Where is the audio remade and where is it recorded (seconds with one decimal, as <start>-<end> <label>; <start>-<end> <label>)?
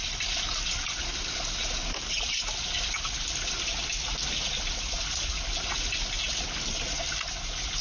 0.0-7.8 recorded